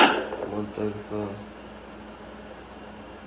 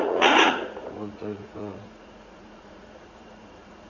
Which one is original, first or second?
first